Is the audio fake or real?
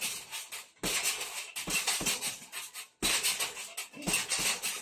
real